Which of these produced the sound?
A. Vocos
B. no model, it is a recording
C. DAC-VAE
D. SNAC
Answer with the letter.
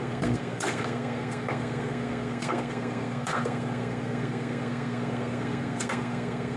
D